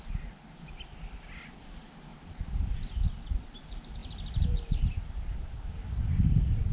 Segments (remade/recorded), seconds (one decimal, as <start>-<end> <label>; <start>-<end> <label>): 0.0-2.1 recorded; 2.1-2.7 remade; 2.7-6.7 recorded